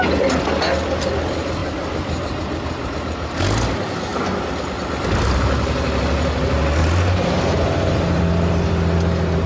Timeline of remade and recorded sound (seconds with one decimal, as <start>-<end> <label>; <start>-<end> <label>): 0.0-1.6 recorded; 1.6-2.9 remade; 2.9-6.8 recorded; 6.8-8.2 remade; 8.2-9.5 recorded